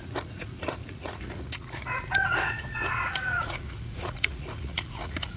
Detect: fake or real fake